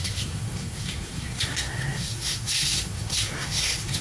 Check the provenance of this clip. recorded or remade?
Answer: remade